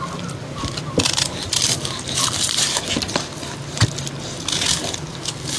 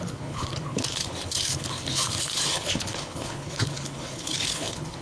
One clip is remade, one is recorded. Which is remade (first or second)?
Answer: second